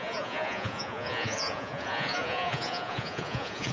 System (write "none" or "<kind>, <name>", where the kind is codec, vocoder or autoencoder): vocoder, Vocos